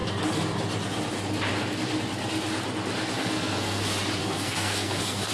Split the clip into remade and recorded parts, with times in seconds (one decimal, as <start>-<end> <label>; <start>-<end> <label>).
0.0-3.2 recorded; 3.2-3.8 remade; 3.8-4.2 recorded; 4.2-5.3 remade

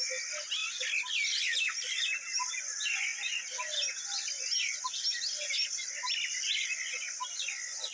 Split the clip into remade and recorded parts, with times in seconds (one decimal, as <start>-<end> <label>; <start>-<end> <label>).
0.0-7.9 recorded

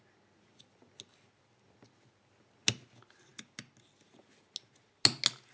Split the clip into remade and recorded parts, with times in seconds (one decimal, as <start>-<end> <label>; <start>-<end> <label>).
0.0-5.5 recorded